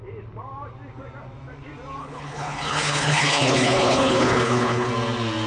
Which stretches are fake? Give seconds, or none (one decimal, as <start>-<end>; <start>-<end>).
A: 2.0-4.9